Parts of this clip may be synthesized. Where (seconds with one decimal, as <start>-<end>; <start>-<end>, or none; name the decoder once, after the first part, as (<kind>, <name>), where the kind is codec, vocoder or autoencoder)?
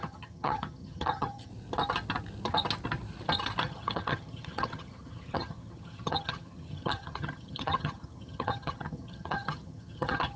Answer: 0.0-1.5 (vocoder, HiFi-GAN); 3.6-10.4